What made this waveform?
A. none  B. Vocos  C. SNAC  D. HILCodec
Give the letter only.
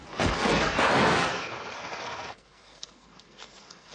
C